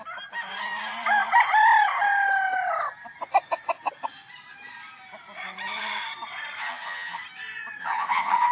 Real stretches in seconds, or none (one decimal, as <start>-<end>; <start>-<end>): 0.0-6.6; 7.2-7.8